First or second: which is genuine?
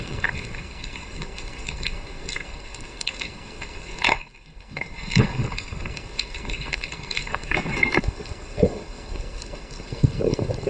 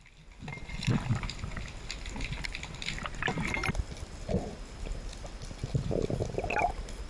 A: second